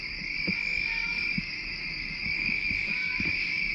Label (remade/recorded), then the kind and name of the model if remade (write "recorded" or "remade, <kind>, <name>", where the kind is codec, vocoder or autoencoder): remade, codec, DAC